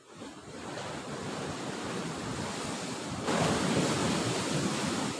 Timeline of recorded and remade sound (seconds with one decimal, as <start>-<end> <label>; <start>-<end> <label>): 0.0-5.2 recorded